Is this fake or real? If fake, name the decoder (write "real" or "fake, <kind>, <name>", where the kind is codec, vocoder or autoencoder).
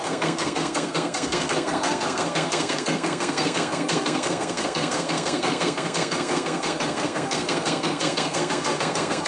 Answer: fake, codec, SNAC